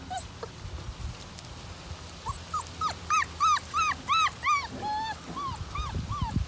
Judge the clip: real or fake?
real